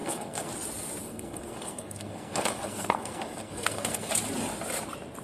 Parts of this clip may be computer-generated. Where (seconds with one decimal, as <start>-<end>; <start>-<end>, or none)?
0.0-0.5; 1.0-4.1